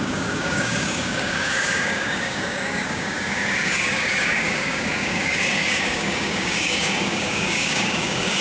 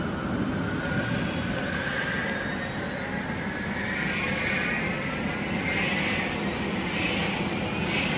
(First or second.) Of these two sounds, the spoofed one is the first